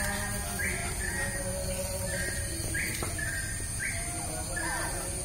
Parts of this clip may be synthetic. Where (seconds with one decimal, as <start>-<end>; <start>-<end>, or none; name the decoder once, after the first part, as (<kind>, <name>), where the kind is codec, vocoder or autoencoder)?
none